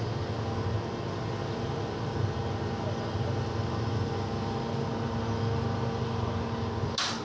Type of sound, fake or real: real